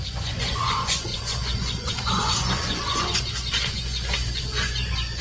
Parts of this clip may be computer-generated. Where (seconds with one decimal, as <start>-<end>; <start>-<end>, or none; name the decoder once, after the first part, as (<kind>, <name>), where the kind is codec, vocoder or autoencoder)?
0.0-5.2 (vocoder, Vocos)